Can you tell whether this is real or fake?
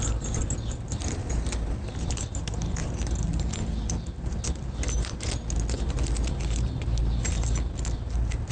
real